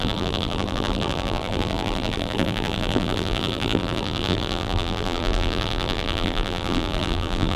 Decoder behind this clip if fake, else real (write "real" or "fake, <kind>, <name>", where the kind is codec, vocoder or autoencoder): fake, vocoder, BigVGAN v2